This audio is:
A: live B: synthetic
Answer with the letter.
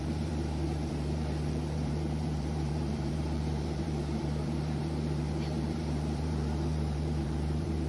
B